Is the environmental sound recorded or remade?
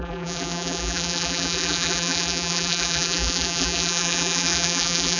remade